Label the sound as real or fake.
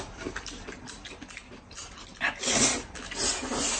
real